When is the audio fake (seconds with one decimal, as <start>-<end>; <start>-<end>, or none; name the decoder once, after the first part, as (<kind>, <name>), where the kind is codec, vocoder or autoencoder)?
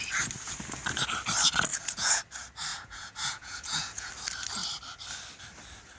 1.7-2.2 (vocoder, Vocos); 2.7-4.1